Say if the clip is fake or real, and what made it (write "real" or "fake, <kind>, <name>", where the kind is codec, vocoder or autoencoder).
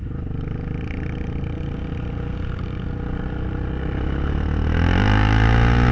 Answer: real